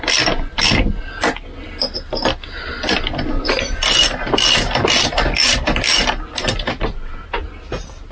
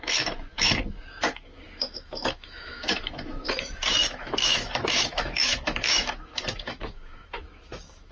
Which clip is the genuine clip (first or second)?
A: first